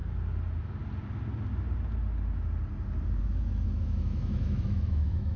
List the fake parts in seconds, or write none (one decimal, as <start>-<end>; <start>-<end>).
3.2-5.4

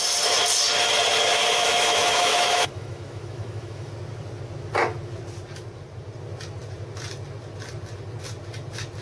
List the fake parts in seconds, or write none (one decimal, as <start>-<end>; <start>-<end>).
1.3-3.9